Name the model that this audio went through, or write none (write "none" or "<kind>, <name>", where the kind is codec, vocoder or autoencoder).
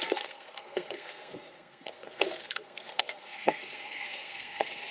codec, SNAC